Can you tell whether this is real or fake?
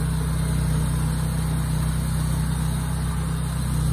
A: real